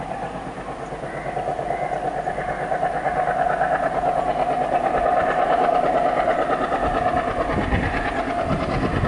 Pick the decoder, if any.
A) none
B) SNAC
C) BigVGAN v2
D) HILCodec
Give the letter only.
A